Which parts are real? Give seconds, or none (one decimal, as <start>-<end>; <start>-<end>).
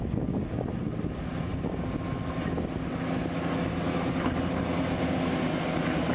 0.0-6.1